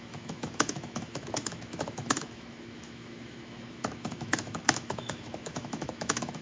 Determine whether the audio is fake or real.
fake